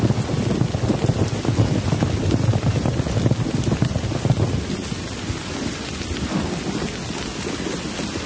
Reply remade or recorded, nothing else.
recorded